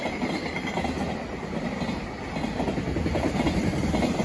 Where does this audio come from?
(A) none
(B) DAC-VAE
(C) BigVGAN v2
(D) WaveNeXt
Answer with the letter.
A